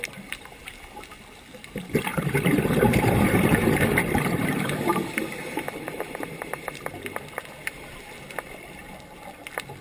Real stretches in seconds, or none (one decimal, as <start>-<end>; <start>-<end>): 0.0-2.1; 6.9-9.8